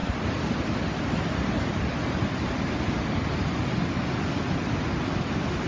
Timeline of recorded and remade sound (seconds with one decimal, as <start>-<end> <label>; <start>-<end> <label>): 0.0-5.7 recorded